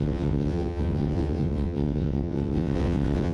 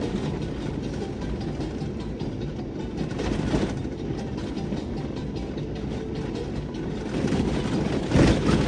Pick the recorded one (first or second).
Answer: second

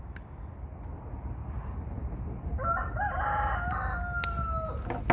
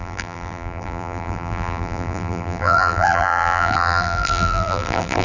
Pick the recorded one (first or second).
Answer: first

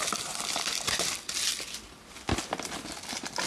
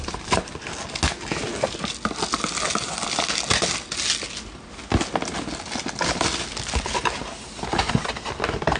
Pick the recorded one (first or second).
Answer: second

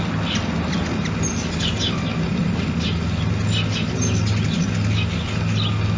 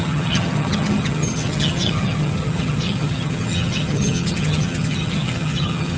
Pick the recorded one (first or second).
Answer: first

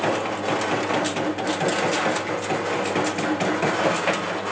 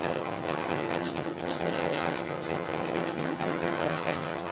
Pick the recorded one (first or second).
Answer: first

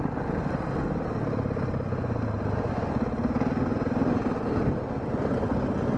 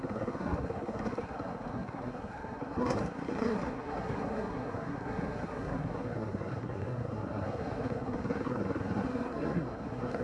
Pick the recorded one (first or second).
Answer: first